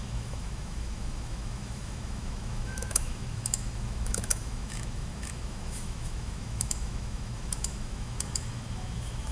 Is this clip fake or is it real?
fake